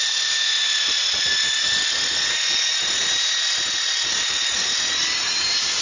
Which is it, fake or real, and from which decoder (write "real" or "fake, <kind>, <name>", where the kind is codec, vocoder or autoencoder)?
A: real